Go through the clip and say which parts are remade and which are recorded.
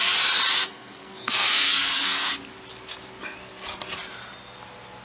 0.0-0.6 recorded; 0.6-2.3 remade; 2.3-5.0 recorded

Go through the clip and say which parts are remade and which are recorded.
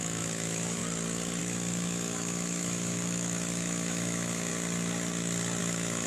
0.0-0.8 remade; 0.8-1.4 recorded; 1.4-4.5 remade; 4.5-5.6 recorded; 5.6-6.1 remade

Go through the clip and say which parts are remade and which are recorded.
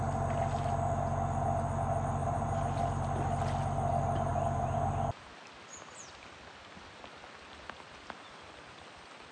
0.0-2.2 recorded; 2.2-3.0 remade; 3.0-4.3 recorded; 4.3-4.9 remade; 4.9-9.3 recorded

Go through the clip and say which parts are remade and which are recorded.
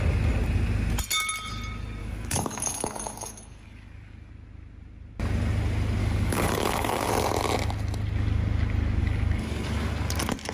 0.0-2.0 recorded; 2.0-4.3 remade; 4.3-6.0 recorded; 6.0-7.1 remade; 7.1-9.0 recorded; 9.0-9.9 remade; 9.9-10.5 recorded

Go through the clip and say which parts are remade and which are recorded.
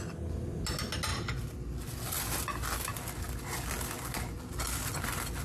0.0-5.4 recorded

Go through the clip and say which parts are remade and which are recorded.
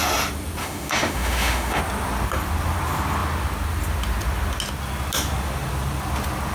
0.0-0.6 recorded; 0.6-1.8 remade; 1.8-6.5 recorded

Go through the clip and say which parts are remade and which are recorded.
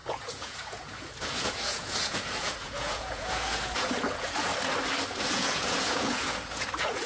0.0-4.5 remade; 4.5-5.2 recorded; 5.2-7.1 remade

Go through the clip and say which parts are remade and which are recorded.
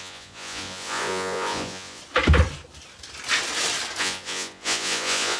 0.0-2.0 remade; 2.0-4.0 recorded; 4.0-5.4 remade